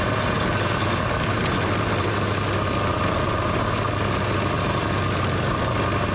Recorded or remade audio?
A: recorded